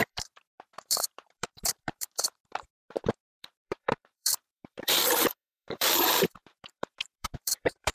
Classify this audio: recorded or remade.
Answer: remade